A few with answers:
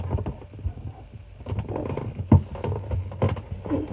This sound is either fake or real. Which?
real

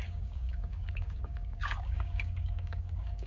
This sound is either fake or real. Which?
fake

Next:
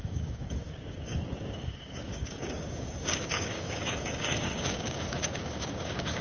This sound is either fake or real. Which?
fake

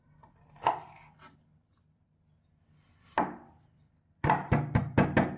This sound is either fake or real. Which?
real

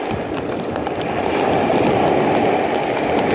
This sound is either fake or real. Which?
real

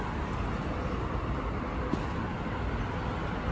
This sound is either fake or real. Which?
real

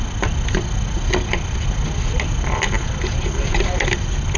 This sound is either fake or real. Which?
real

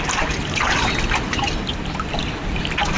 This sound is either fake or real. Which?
real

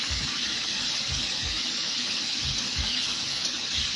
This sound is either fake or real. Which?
fake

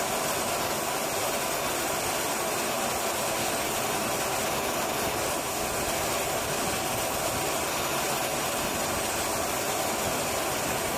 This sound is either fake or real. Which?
real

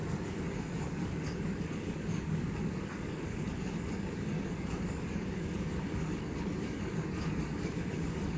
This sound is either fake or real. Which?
fake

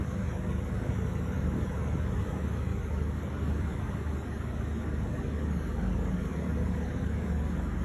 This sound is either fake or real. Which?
fake